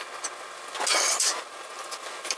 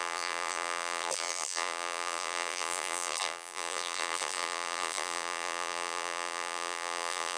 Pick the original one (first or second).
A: first